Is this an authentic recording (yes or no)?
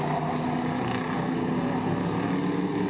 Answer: yes